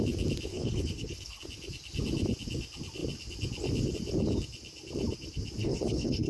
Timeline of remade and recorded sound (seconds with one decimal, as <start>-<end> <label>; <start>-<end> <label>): 0.0-0.5 recorded; 0.5-1.4 remade; 1.4-5.6 recorded; 5.6-6.3 remade